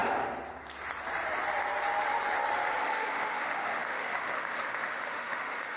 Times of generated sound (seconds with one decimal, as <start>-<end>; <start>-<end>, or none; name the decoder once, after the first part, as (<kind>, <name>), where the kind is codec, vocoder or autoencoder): 2.8-5.8 (autoencoder, DAC-VAE)